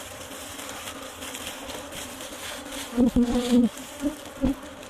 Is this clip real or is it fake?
fake